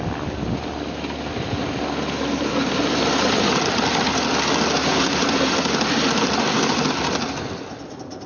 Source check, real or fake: real